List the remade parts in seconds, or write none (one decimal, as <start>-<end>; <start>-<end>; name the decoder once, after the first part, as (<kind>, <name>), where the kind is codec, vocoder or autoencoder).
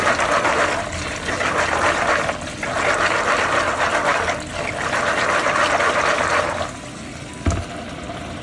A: none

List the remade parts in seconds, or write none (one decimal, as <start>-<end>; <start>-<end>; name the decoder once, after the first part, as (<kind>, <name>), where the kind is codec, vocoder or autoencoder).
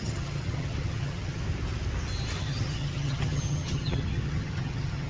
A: 0.0-1.4 (vocoder, HiFi-GAN); 2.4-5.1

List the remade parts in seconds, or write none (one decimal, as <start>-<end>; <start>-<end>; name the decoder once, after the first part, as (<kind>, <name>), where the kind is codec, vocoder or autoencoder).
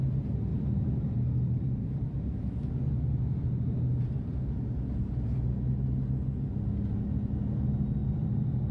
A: 0.5-2.1 (vocoder, BigVGAN v2); 8.0-8.7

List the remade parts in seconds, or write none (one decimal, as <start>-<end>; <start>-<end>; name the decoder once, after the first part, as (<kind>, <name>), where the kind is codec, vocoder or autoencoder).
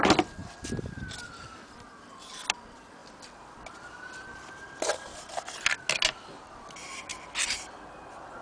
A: none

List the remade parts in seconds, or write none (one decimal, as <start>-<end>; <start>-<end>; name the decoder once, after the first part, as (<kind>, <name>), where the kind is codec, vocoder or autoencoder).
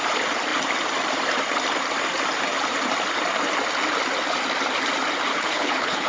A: 5.3-6.1 (codec, HILCodec)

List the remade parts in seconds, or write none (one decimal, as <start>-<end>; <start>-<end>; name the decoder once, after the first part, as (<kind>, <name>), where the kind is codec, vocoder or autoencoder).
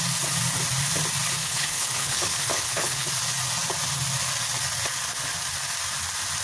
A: 1.4-3.1 (codec, HILCodec)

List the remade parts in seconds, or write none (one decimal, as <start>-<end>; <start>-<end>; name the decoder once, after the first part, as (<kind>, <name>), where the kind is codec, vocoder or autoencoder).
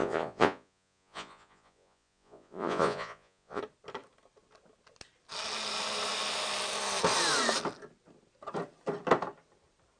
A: 0.0-3.6 (vocoder, Vocos)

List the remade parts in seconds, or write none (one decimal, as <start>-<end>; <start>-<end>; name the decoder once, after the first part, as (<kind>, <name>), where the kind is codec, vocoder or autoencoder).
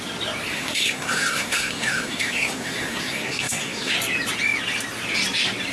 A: 0.5-3.9 (codec, SNAC)